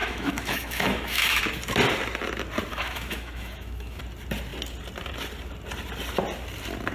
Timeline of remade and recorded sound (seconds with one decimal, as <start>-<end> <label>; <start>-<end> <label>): 0.0-1.4 remade; 1.4-2.7 recorded; 2.7-4.0 remade; 4.0-6.9 recorded